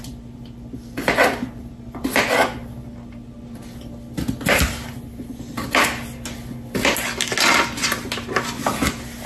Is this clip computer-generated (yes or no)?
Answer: no